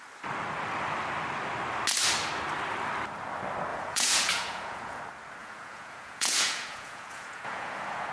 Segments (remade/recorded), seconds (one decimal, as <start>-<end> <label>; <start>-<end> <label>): 0.0-3.7 recorded; 3.7-5.0 remade; 5.0-5.4 recorded; 5.4-8.1 remade